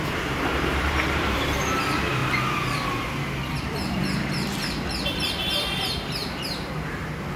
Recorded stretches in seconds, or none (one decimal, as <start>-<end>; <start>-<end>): 2.2-3.5